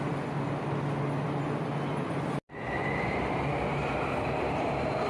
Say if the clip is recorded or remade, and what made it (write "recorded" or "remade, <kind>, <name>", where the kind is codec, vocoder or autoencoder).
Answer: recorded